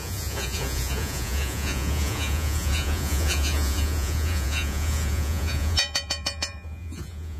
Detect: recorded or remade remade